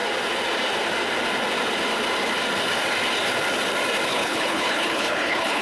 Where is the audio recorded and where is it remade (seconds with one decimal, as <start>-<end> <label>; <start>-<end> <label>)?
0.0-4.1 recorded; 4.1-5.6 remade